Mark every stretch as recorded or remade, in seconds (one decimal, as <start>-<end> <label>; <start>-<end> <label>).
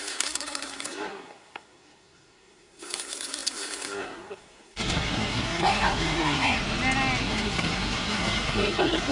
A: 0.0-6.6 remade; 6.6-7.2 recorded; 7.2-9.1 remade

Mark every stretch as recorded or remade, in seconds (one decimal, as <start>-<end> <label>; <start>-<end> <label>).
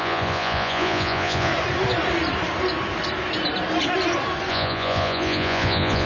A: 0.0-1.5 remade; 1.5-4.5 recorded; 4.5-6.1 remade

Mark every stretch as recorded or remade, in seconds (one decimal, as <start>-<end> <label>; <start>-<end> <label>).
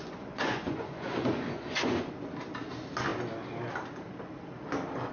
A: 0.0-2.1 remade; 2.1-5.1 recorded